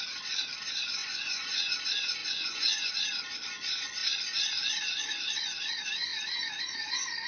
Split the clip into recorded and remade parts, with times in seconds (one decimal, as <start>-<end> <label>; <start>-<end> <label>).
0.0-1.0 recorded; 1.0-1.7 remade; 1.7-2.2 recorded; 2.2-2.9 remade; 2.9-7.3 recorded